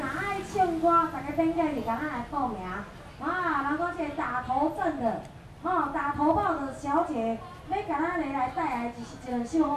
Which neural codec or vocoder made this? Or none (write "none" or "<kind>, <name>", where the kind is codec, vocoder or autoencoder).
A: none